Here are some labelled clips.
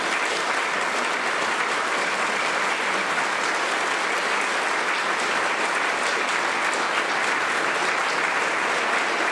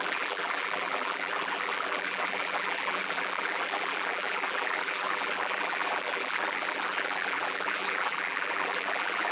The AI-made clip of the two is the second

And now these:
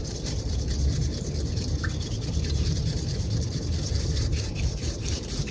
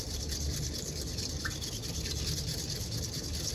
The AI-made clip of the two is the first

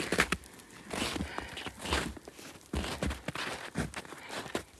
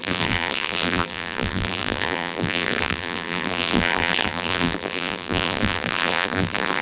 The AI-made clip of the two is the second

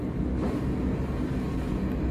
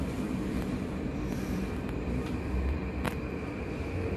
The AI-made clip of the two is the second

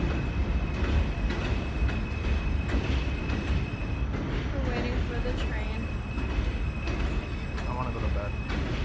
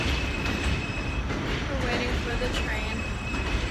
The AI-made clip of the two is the second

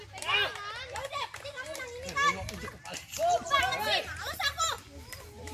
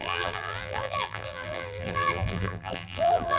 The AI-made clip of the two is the second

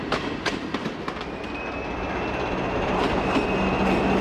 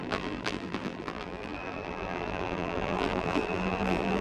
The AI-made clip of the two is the second